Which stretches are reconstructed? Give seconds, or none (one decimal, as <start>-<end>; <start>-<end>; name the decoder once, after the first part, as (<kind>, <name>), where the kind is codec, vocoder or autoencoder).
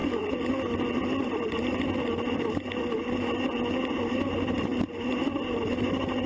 none